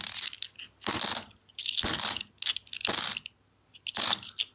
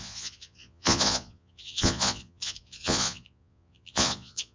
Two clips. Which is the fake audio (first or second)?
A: second